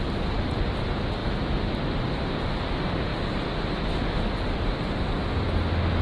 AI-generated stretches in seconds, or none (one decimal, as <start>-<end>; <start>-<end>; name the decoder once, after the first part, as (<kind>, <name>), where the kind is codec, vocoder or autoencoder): 0.0-5.2 (vocoder, BigVGAN v2)